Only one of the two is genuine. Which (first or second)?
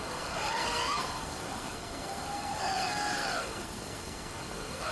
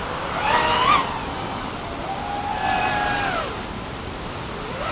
second